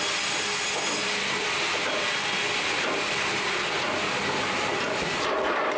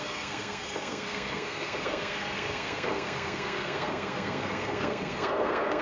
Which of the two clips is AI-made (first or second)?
second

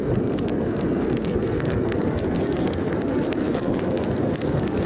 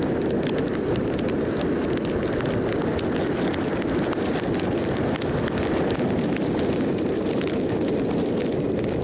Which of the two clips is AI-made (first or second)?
first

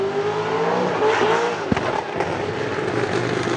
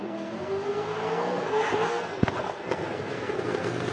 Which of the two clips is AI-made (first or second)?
second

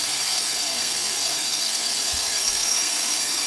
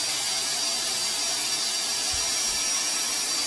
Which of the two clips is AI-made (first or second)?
first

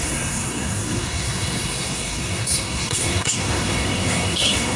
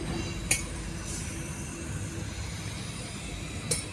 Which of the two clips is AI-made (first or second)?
first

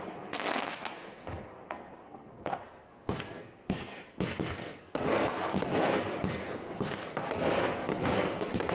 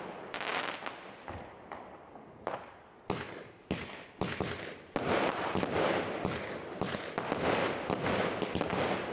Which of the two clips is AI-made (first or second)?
first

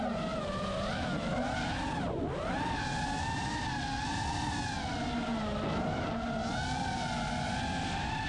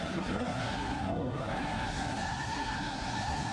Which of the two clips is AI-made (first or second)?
second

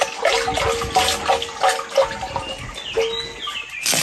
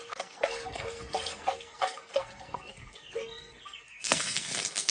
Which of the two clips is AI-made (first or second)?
second